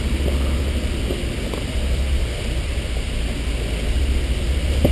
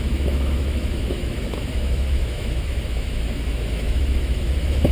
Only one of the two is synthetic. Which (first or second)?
second